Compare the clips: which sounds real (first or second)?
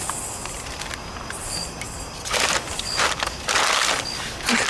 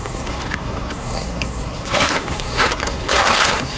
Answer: first